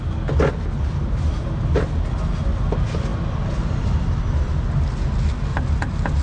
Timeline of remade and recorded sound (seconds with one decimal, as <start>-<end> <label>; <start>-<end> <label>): 0.0-6.2 recorded